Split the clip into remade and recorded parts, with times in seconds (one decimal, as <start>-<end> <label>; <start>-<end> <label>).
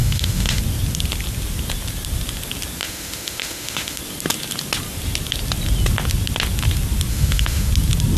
0.0-0.6 remade; 0.6-2.8 recorded; 2.8-4.0 remade; 4.0-7.1 recorded; 7.1-7.7 remade; 7.7-8.2 recorded